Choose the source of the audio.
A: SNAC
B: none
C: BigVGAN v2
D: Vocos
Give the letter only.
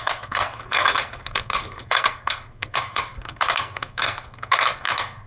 A